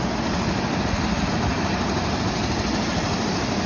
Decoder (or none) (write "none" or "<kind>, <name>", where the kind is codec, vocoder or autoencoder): none